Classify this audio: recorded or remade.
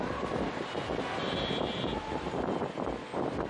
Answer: recorded